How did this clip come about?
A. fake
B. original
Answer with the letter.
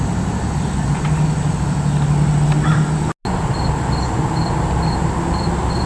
B